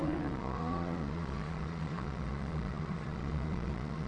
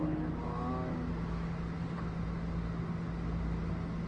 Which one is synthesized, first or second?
first